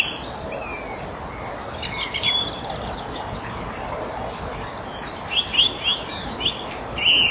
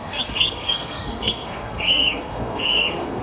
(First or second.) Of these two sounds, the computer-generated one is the second